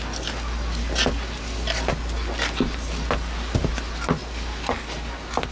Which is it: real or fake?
real